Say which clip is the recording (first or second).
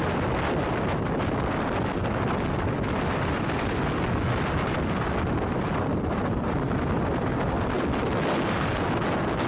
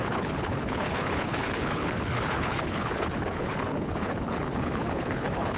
first